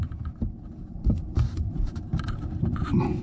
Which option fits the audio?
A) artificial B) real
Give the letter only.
A